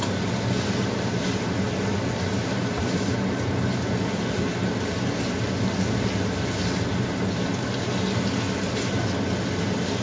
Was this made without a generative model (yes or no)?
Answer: yes